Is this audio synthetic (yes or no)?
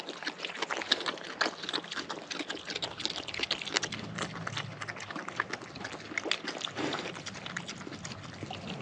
no